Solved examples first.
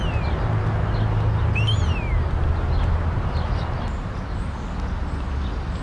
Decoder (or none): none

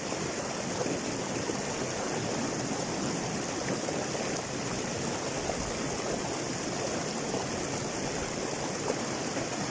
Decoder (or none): none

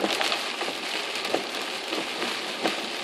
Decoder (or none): none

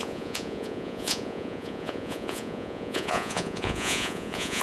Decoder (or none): vocoder, Vocos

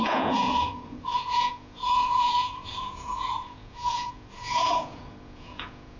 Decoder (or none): vocoder, Vocos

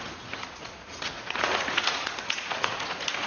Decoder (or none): vocoder, Vocos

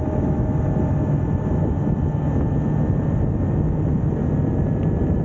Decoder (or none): none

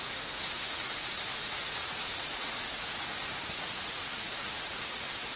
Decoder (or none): vocoder, Vocos